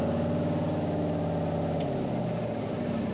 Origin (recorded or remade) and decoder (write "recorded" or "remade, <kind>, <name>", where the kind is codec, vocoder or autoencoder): recorded